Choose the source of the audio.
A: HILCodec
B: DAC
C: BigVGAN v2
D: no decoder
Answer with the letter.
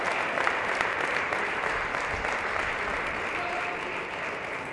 C